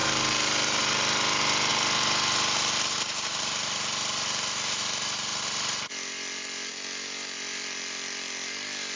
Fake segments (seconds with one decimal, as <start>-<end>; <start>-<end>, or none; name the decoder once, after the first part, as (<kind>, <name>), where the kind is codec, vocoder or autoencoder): none